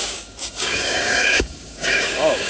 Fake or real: fake